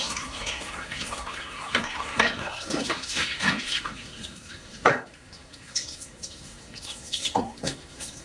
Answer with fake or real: fake